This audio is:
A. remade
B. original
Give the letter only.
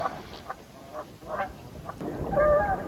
A